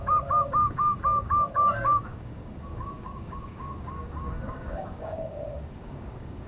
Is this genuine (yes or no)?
no